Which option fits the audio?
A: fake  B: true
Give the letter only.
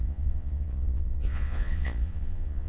A